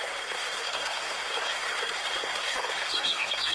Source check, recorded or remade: remade